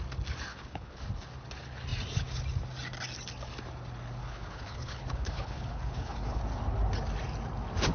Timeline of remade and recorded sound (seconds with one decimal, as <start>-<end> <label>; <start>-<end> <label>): 0.0-0.5 recorded; 0.5-1.0 remade; 1.0-4.2 recorded; 4.2-6.4 remade; 6.4-7.9 recorded